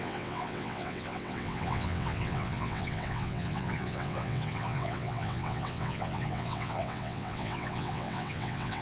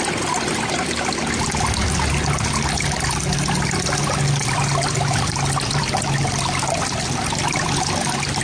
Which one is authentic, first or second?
second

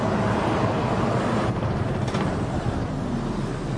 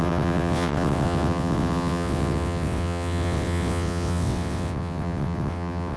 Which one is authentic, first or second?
first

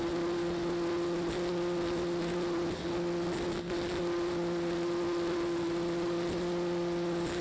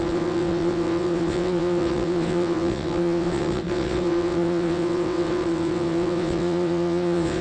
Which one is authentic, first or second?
first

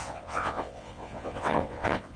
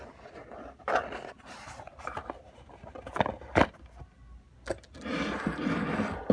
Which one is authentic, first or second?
second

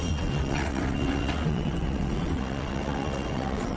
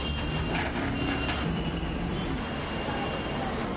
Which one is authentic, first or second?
second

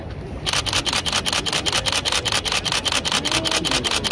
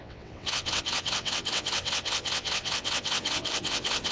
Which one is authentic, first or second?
first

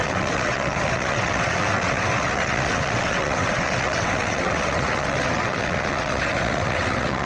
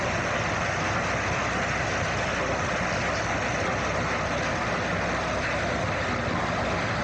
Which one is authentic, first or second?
second